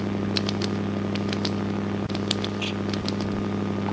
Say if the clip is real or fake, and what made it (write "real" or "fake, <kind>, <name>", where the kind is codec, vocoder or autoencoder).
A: real